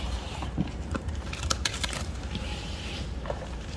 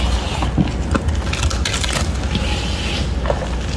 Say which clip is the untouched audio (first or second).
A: second